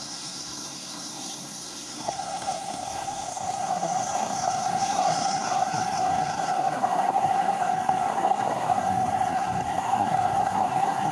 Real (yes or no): no